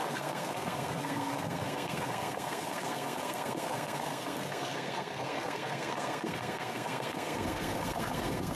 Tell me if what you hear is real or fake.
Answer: fake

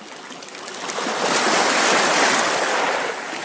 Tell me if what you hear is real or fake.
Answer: real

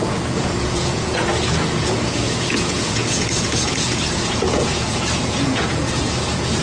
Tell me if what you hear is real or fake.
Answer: fake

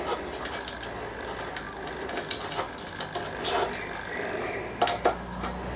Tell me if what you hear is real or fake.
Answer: real